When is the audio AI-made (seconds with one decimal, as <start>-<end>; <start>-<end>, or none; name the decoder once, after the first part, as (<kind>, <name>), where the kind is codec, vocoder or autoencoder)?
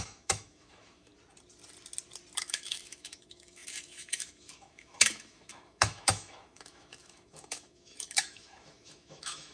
0.0-1.1 (autoencoder, DAC-VAE); 2.4-9.5